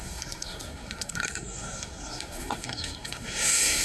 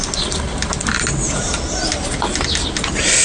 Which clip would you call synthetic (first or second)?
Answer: first